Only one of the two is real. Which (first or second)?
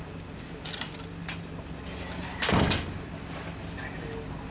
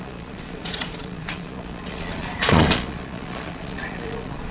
first